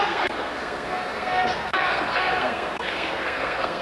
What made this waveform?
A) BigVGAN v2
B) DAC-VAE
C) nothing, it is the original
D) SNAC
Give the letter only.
D